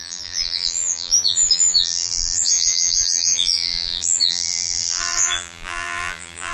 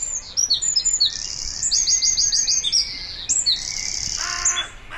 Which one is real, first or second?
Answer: second